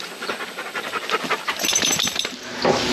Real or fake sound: fake